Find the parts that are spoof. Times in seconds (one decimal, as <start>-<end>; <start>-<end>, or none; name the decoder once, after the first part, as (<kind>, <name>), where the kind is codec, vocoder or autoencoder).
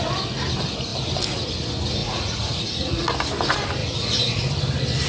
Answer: 2.0-3.1 (vocoder, Vocos); 3.8-4.4